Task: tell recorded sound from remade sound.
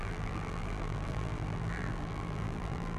remade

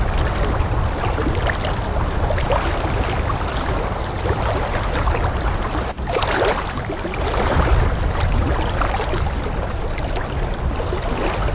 recorded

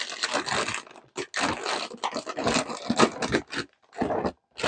recorded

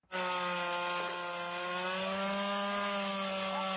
recorded